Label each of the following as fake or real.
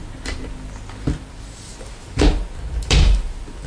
real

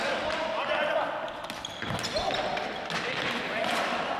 real